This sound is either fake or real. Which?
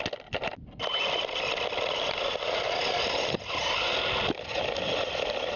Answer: real